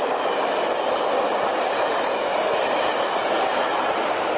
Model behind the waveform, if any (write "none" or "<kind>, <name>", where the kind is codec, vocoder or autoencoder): none